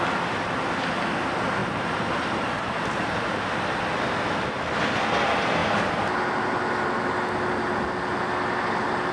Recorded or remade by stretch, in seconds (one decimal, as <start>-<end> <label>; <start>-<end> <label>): 0.0-1.6 recorded; 1.6-3.2 remade; 3.2-9.1 recorded

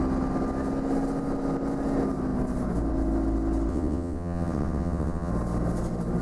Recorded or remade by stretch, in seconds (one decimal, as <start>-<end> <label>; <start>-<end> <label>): 0.0-3.7 recorded; 3.7-5.3 remade; 5.3-6.2 recorded

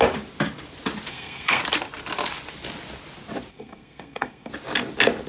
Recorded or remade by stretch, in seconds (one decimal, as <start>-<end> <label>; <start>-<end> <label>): 0.0-1.1 recorded; 1.1-1.6 remade; 1.6-3.5 recorded; 3.5-4.5 remade; 4.5-5.3 recorded

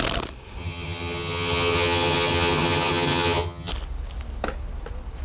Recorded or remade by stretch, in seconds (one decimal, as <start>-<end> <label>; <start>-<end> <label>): 0.0-0.6 recorded; 0.6-3.7 remade; 3.7-5.2 recorded

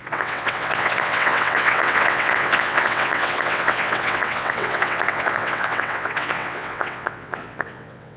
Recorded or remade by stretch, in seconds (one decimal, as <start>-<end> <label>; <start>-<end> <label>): 0.0-8.2 remade

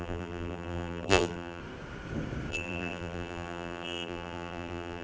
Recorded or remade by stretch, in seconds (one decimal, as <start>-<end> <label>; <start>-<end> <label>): 0.0-1.6 remade; 1.6-2.5 recorded; 2.5-5.0 remade

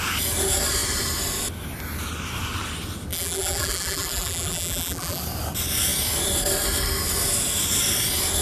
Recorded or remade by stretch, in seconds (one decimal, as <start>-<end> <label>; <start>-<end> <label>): 0.0-3.1 recorded; 3.1-5.2 remade; 5.2-8.4 recorded